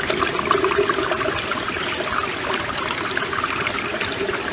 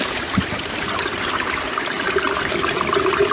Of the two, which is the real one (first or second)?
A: first